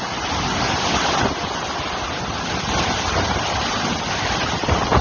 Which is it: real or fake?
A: real